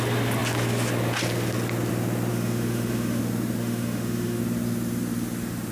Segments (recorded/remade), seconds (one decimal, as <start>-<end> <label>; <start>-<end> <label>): 0.0-2.3 recorded; 2.3-3.2 remade; 3.2-3.6 recorded; 3.6-4.4 remade; 4.4-5.7 recorded